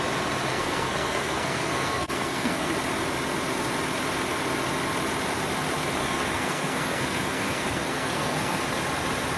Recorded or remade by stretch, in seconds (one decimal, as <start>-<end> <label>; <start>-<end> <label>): 0.0-0.5 recorded; 0.5-2.7 remade; 2.7-6.0 recorded; 6.0-8.6 remade; 8.6-9.4 recorded